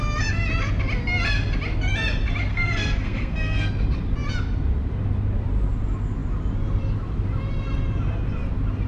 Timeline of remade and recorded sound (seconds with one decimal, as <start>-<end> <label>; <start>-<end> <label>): 0.0-2.5 recorded; 2.5-3.7 remade; 3.7-8.9 recorded